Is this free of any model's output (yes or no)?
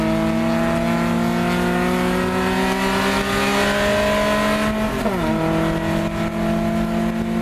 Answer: yes